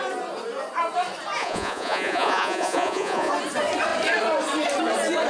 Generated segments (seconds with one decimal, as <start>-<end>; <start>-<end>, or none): 1.4-3.3